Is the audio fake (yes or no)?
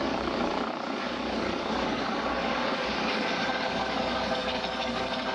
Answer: yes